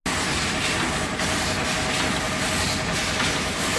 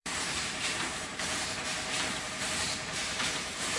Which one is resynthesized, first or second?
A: second